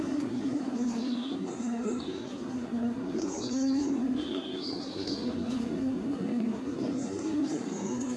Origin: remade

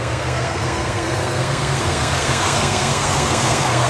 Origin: remade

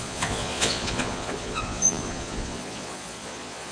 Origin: remade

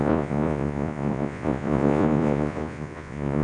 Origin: remade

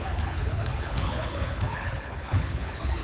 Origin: remade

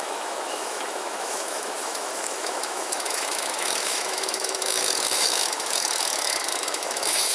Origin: remade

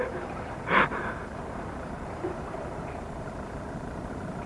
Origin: remade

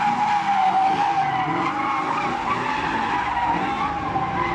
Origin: recorded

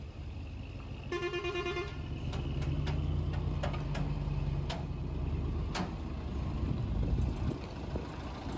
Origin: recorded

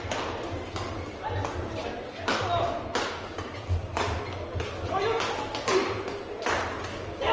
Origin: recorded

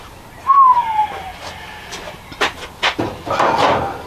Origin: recorded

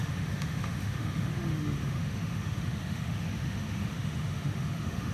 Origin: remade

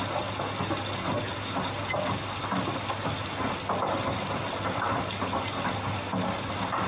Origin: recorded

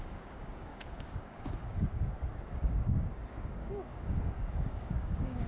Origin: remade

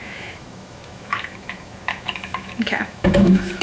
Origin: remade